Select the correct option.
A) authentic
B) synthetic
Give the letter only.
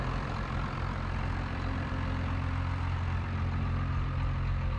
B